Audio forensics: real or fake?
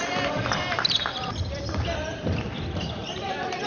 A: fake